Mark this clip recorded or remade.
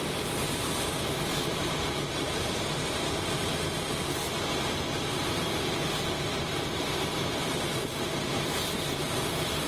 recorded